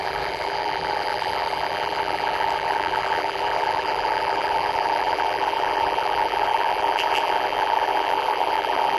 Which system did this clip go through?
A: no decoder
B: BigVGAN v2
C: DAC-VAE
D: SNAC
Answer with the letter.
B